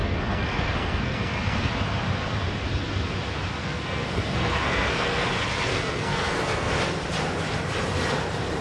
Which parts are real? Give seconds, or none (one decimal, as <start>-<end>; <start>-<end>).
1.7-3.6; 5.3-5.7; 6.7-8.6